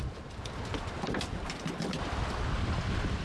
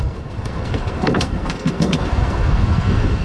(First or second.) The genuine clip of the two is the first